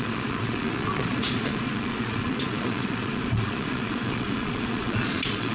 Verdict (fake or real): fake